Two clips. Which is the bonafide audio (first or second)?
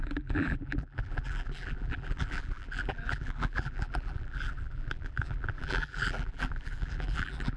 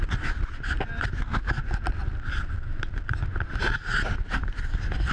second